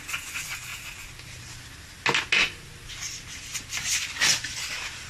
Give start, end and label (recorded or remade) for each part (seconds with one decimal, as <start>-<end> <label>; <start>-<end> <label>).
0.0-5.1 recorded